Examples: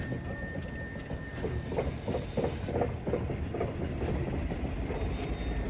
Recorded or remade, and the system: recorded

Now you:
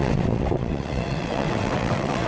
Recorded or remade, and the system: remade, vocoder, WaveNeXt